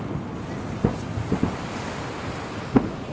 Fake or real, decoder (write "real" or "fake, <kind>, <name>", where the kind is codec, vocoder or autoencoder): real